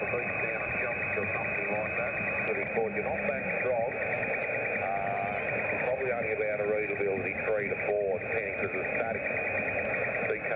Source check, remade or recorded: recorded